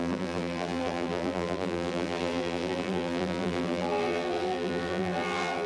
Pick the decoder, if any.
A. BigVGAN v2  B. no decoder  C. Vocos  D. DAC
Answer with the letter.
A